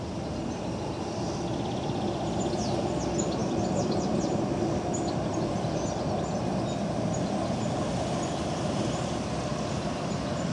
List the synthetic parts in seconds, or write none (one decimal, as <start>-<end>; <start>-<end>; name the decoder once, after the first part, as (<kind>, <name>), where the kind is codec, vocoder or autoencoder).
3.4-4.6 (vocoder, BigVGAN v2)